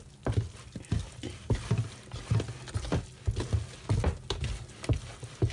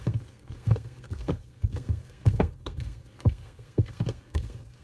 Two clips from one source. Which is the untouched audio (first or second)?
first